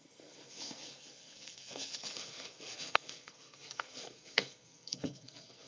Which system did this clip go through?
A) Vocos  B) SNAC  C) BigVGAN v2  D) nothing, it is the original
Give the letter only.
B